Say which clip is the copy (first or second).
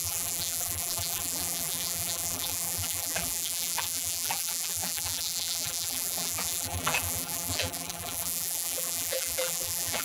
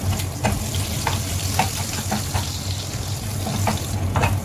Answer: first